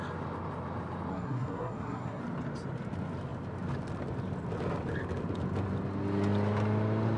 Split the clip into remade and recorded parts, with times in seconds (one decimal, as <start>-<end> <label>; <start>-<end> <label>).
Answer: 0.0-1.1 recorded; 1.1-2.2 remade; 2.2-7.2 recorded